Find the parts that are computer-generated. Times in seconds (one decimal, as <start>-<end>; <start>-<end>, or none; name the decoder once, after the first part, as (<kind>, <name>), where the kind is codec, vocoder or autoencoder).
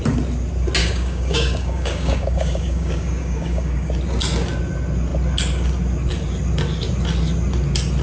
0.8-3.9 (codec, DAC)